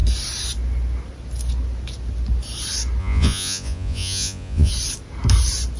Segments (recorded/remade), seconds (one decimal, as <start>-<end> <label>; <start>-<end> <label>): 0.0-3.0 recorded; 3.0-4.7 remade; 4.7-5.8 recorded